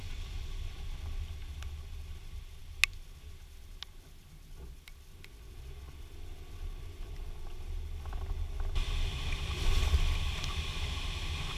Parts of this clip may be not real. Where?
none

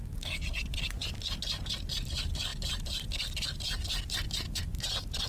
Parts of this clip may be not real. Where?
none

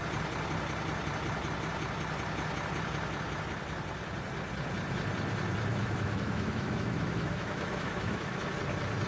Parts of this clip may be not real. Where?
5.7-8.5 (autoencoder, DAC-VAE)

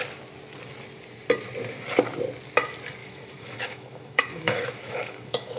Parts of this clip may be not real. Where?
3.0-5.6 (autoencoder, DAC-VAE)